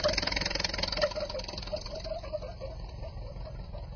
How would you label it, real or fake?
real